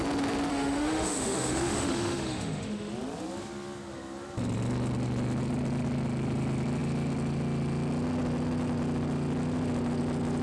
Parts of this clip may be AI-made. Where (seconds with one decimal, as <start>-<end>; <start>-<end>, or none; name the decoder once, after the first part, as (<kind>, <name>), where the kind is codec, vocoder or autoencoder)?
0.5-2.9 (autoencoder, DAC-VAE)